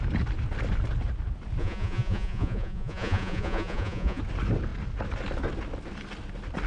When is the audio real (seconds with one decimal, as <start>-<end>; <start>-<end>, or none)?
0.0-1.6; 4.2-6.7